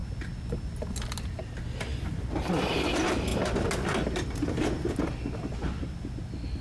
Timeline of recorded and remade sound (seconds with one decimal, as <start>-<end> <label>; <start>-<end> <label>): 0.0-6.6 recorded